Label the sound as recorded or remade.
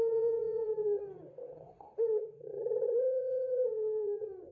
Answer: remade